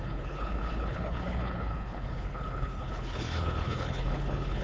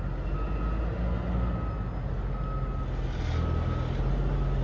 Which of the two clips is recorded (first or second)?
second